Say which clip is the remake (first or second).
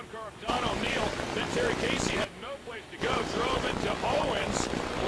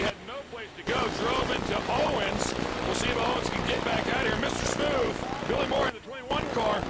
first